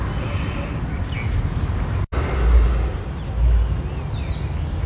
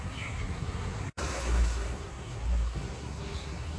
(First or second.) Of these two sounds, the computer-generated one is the second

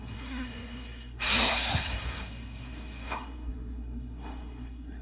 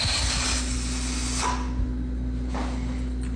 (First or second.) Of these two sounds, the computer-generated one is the first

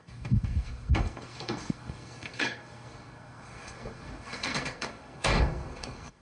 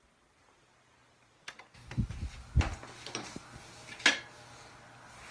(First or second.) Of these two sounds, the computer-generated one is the first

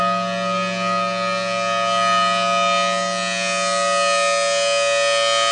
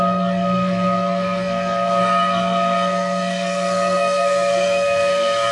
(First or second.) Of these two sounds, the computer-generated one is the second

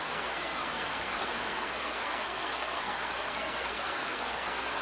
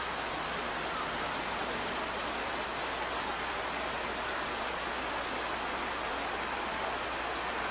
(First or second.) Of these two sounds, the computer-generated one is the first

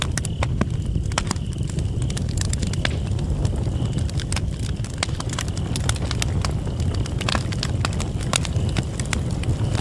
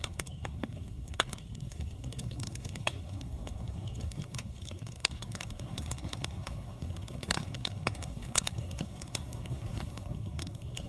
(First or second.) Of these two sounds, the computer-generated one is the second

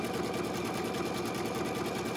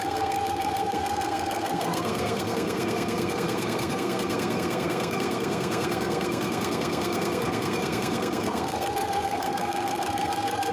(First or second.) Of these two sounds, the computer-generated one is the second